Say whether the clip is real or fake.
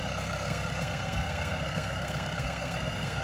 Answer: fake